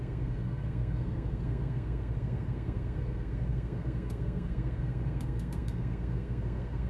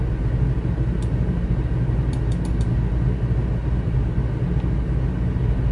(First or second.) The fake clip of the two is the first